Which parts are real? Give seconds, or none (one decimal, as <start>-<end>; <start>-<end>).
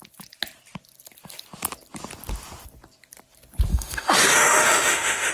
0.0-3.7